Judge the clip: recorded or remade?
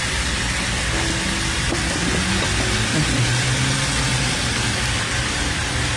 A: recorded